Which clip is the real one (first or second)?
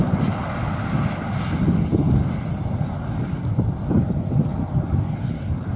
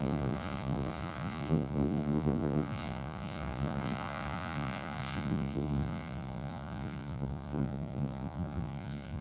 first